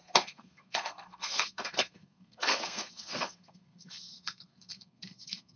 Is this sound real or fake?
fake